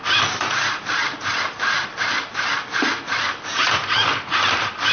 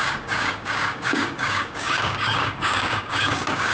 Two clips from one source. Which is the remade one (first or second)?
second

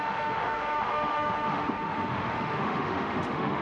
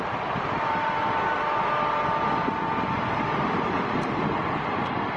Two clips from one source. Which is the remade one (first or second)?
first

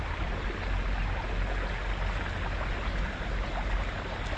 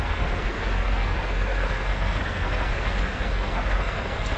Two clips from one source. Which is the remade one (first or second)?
second